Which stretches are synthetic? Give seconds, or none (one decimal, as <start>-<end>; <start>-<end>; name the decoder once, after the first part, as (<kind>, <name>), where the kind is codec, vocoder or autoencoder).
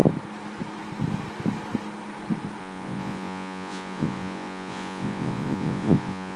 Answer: 2.6-6.4 (vocoder, Vocos)